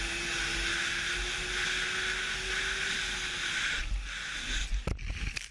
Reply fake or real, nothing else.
real